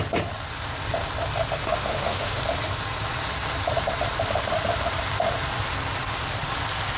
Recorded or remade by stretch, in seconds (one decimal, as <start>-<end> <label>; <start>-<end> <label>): 0.0-1.6 recorded; 1.6-2.4 remade; 2.4-7.0 recorded